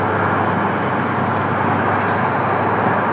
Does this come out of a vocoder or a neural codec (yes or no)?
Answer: no